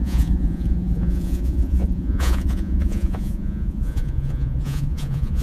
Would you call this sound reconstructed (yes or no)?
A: yes